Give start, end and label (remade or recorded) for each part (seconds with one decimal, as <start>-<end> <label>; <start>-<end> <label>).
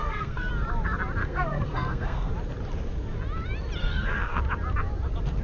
0.0-0.5 remade; 0.5-1.2 recorded; 1.2-2.3 remade; 2.3-3.8 recorded; 3.8-4.4 remade; 4.4-5.4 recorded